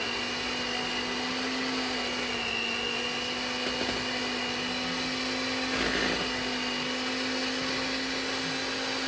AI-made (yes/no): no